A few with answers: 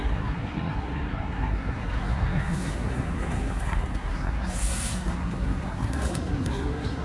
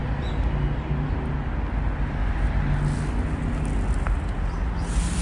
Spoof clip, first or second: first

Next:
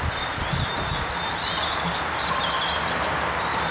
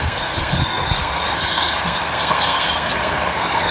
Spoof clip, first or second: second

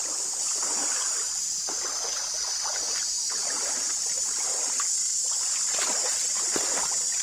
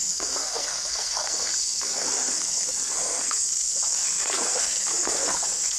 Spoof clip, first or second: second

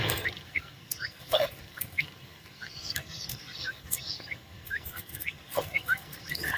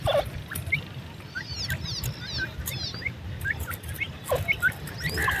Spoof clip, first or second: first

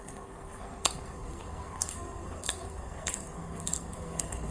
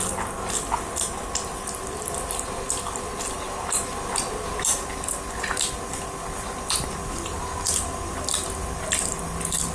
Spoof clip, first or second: first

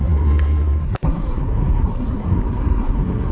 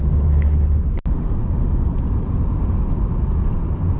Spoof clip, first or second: first